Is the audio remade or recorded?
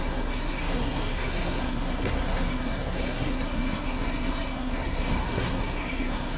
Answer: remade